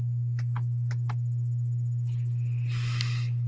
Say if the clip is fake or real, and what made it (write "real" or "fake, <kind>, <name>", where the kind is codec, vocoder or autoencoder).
real